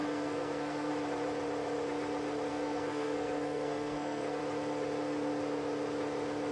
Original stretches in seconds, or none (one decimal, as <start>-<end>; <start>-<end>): 0.9-2.5; 4.4-6.5